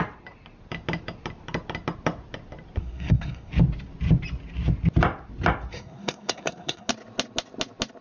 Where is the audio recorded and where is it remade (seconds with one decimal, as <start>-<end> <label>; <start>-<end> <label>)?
0.0-2.8 recorded; 2.8-3.5 remade; 3.5-5.7 recorded; 5.7-6.9 remade; 6.9-8.0 recorded

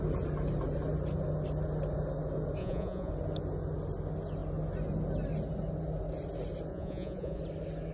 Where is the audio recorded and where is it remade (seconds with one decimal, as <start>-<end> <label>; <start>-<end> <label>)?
0.0-2.6 recorded; 2.6-3.1 remade; 3.1-6.7 recorded; 6.7-7.4 remade; 7.4-7.9 recorded

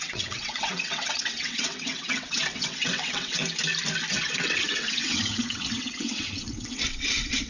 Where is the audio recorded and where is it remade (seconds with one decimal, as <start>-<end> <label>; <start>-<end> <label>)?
0.0-3.4 remade; 3.4-4.1 recorded; 4.1-7.5 remade